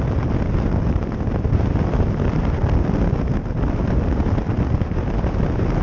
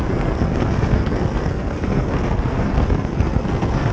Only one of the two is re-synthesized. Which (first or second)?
second